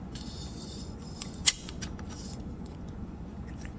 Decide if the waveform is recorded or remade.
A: remade